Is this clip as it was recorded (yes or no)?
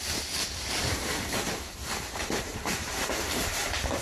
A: no